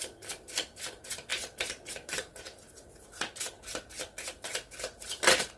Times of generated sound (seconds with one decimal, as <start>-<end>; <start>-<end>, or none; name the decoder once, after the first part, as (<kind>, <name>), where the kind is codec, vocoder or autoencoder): none